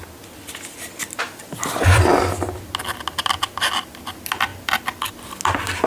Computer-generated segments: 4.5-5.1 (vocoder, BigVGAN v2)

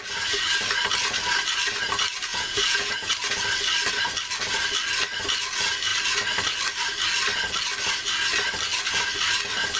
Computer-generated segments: 2.3-3.1 (vocoder, Vocos)

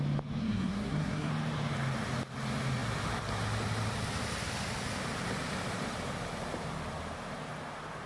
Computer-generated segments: 0.4-1.3 (codec, SNAC)

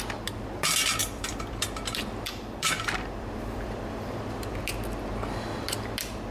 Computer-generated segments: 1.0-4.6 (vocoder, BigVGAN v2)